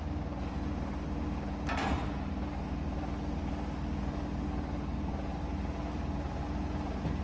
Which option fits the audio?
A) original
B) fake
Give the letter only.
A